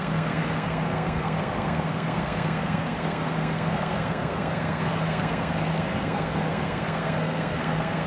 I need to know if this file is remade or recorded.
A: remade